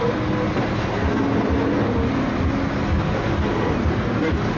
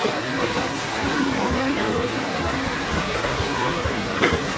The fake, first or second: second